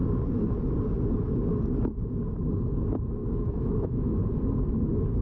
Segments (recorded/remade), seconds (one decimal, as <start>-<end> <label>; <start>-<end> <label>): 0.0-3.2 recorded; 3.2-4.3 remade; 4.3-5.2 recorded